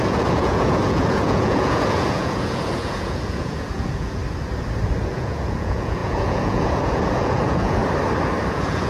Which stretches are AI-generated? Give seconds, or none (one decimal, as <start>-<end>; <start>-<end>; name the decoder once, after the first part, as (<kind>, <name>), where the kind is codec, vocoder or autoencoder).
0.0-4.2 (vocoder, Vocos); 5.1-7.8; 8.5-8.9